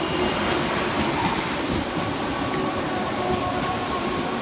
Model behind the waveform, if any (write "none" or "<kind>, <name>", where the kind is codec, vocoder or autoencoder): vocoder, BigVGAN v2